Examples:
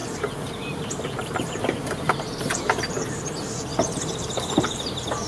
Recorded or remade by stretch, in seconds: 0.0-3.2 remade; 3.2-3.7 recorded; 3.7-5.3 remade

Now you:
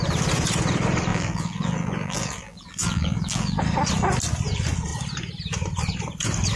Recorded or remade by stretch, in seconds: 0.0-1.1 recorded; 1.1-3.6 remade; 3.6-6.6 recorded

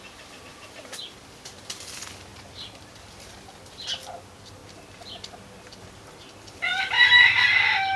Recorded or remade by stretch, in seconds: 0.0-0.5 recorded; 0.5-1.6 remade; 1.6-2.3 recorded; 2.3-3.3 remade; 3.3-4.6 recorded; 4.6-7.1 remade; 7.1-8.0 recorded

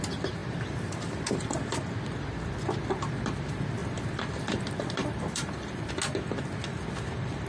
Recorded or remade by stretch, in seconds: 0.0-0.4 recorded; 0.4-1.9 remade; 1.9-3.8 recorded; 3.8-5.9 remade; 5.9-7.5 recorded

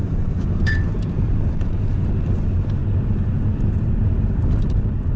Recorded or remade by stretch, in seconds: 0.0-2.1 remade; 2.1-5.2 recorded